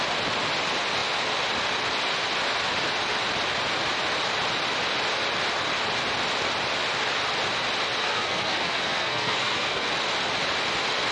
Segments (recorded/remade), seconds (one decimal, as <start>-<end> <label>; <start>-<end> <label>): 0.0-8.0 recorded; 8.0-9.9 remade; 9.9-11.1 recorded